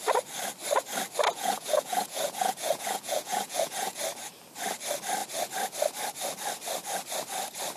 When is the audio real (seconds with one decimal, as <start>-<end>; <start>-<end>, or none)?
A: 0.0-1.3; 4.0-7.8